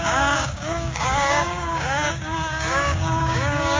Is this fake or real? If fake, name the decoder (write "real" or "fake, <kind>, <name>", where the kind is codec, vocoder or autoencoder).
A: fake, codec, DAC